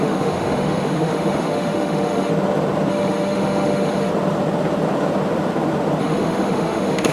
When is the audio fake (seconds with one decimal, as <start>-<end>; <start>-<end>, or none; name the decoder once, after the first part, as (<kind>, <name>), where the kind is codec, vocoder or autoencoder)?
0.0-2.3 (autoencoder, DAC-VAE); 2.9-4.1; 6.0-7.1